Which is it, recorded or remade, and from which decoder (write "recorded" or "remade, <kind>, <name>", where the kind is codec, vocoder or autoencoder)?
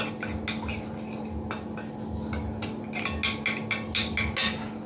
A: recorded